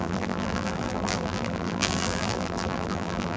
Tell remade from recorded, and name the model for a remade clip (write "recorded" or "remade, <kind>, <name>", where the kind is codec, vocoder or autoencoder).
remade, vocoder, BigVGAN v2